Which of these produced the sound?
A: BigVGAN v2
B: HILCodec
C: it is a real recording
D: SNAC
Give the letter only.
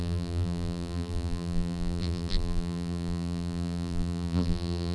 A